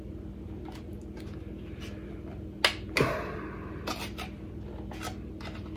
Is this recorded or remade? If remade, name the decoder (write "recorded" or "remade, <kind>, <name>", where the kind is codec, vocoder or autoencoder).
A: recorded